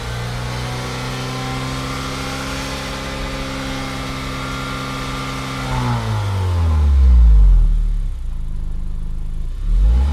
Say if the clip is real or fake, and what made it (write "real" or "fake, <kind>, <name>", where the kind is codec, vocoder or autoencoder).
real